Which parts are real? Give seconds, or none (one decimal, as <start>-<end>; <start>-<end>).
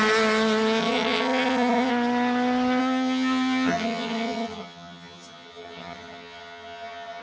0.0-0.8; 1.9-2.8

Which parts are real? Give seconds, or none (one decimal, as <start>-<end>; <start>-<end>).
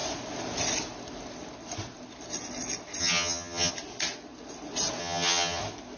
0.0-3.0; 3.7-5.0; 5.6-6.0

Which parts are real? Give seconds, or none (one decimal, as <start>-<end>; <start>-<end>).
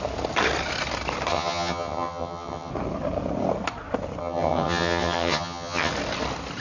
0.0-1.3; 2.7-4.2; 5.9-6.6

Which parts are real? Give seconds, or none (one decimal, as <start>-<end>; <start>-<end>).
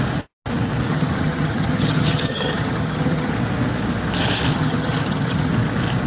0.0-0.9; 3.3-4.5; 5.5-6.1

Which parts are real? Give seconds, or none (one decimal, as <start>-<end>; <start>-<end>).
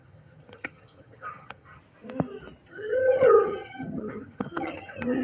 1.8-2.7